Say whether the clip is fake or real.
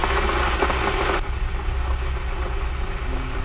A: real